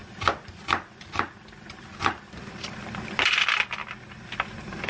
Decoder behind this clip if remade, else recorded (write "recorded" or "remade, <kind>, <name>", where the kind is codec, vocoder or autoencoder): recorded